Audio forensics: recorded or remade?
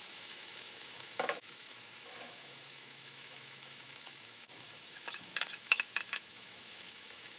remade